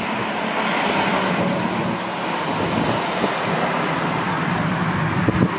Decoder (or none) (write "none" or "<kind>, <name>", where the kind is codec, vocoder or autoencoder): none